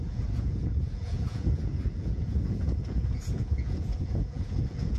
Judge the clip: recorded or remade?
remade